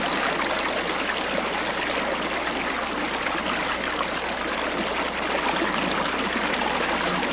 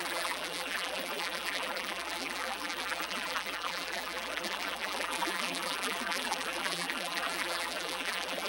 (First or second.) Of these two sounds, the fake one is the second